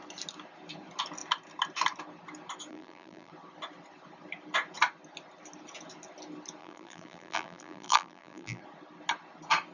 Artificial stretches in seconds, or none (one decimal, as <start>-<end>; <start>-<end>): 2.7-3.3; 6.6-8.6

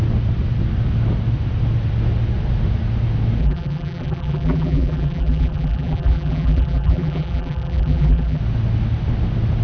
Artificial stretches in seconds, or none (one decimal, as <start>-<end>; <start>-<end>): 3.4-8.4

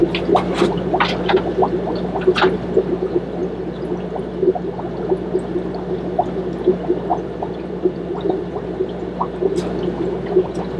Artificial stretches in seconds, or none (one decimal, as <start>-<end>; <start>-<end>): 7.1-9.0

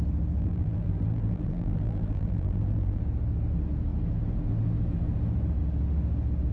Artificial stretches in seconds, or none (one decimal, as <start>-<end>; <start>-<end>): 0.4-3.0

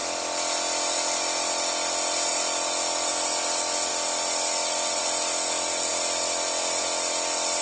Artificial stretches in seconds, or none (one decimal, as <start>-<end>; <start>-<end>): 0.0-1.2; 2.3-3.1; 3.9-5.0; 5.9-6.8